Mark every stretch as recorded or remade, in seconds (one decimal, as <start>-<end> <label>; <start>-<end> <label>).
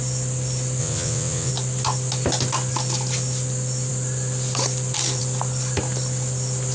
0.0-0.8 recorded; 0.8-1.5 remade; 1.5-6.7 recorded